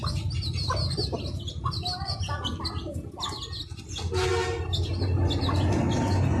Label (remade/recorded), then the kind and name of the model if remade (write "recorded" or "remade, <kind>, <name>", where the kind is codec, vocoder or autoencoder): recorded